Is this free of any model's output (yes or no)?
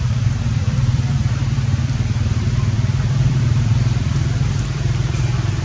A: no